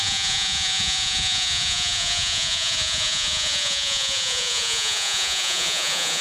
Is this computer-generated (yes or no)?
yes